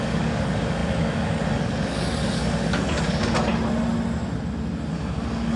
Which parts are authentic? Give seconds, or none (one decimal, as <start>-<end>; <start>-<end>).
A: 3.5-4.9